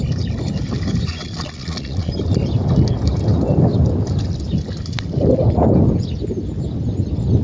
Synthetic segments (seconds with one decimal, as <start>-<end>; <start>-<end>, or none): 1.1-2.1